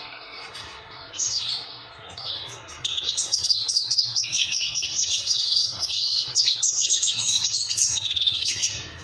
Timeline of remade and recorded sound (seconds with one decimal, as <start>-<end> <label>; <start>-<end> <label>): 0.0-9.0 remade